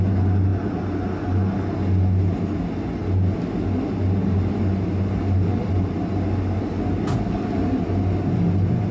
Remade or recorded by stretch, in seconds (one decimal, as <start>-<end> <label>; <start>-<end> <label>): 0.0-8.9 recorded